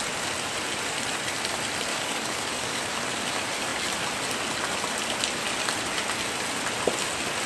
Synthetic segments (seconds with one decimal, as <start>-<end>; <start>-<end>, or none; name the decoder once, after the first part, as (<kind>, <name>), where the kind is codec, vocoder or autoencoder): 1.9-2.8 (codec, DAC)